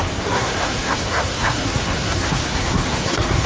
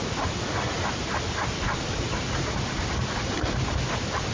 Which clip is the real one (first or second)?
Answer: second